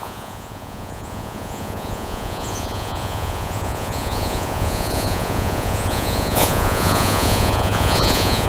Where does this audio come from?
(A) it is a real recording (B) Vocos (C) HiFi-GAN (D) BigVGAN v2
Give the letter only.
B